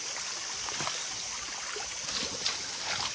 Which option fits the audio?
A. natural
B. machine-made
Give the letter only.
A